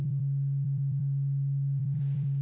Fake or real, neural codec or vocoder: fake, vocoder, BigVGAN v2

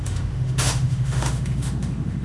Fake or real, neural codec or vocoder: fake, autoencoder, DAC-VAE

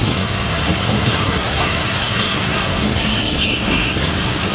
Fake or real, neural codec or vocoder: fake, codec, SNAC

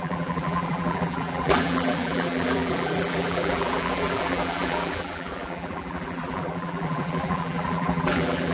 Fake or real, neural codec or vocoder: fake, vocoder, BigVGAN v2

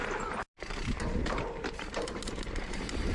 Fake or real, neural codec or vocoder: fake, vocoder, BigVGAN v2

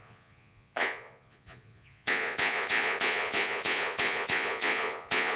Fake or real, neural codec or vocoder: fake, vocoder, Vocos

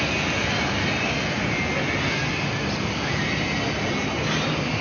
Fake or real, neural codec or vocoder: real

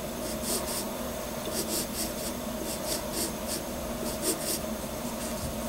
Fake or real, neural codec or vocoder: real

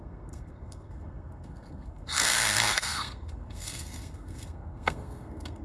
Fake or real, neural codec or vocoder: fake, codec, SNAC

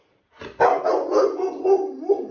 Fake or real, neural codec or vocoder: real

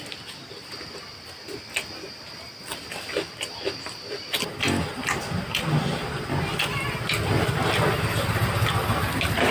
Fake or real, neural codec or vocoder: real